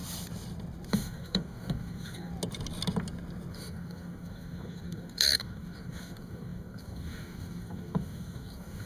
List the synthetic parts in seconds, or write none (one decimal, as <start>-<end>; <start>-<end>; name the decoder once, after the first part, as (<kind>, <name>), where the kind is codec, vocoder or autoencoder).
0.9-2.3 (codec, DAC); 3.5-8.9